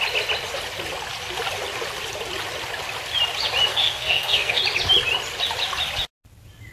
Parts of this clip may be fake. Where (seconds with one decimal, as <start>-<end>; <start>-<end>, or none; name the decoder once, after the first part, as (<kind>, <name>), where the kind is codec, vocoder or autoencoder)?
3.7-4.6 (codec, SNAC)